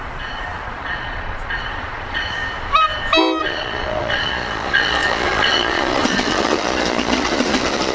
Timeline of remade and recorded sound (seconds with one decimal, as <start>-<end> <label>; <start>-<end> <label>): 0.0-2.4 remade; 2.4-3.4 recorded; 3.4-7.9 remade

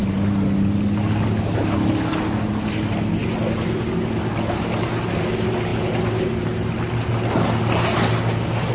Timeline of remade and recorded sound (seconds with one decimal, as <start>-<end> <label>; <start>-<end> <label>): 0.0-8.7 recorded